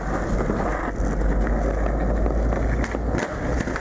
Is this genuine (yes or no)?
yes